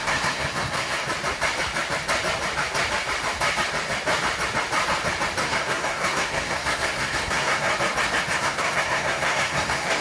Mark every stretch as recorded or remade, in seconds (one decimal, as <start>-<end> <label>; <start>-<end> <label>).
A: 0.0-1.0 remade; 1.0-5.4 recorded; 5.4-7.7 remade; 7.7-8.4 recorded; 8.4-10.0 remade